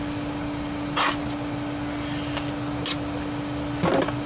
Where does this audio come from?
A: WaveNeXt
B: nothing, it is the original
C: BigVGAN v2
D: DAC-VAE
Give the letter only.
B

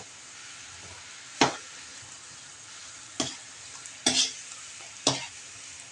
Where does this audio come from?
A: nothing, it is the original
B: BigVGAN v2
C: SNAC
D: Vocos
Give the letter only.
A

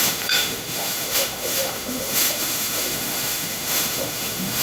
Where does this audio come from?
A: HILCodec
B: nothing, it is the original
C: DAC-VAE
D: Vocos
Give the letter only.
C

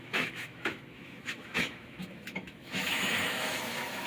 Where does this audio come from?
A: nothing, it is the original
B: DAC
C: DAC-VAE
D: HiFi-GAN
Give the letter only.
C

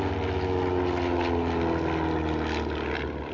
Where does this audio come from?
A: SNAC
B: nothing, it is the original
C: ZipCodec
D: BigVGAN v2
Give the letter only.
B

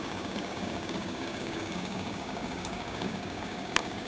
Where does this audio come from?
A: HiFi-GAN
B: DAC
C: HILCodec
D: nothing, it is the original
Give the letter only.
B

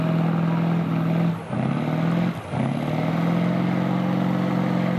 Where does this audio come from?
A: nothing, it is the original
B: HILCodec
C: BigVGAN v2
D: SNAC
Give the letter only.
A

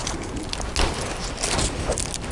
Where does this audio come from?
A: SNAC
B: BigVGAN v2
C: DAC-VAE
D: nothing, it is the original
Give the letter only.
D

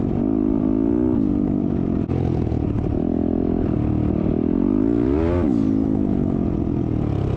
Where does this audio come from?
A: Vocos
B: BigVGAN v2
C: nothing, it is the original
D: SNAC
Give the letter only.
C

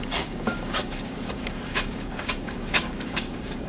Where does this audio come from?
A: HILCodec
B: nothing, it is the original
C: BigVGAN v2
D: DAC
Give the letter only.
D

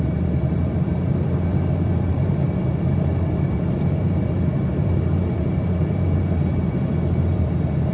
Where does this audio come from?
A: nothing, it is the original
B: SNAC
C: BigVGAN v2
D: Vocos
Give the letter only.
C